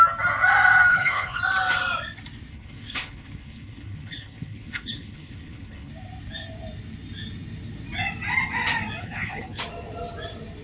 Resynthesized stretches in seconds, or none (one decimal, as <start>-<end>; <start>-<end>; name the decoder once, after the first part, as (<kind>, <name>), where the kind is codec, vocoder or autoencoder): 0.9-1.4 (codec, HILCodec); 2.5-5.9; 9.0-9.6